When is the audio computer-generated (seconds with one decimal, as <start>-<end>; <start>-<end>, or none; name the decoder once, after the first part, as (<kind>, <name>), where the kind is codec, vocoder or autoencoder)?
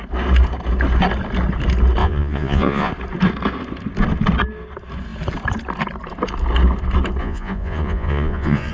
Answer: 2.0-2.9 (vocoder, Vocos); 7.2-8.7